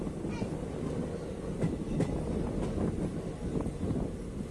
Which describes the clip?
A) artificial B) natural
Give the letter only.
B